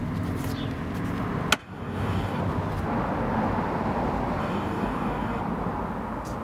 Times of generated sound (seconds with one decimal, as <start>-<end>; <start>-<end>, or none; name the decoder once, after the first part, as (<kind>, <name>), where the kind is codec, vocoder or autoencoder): 1.6-2.4 (codec, DAC); 4.4-5.4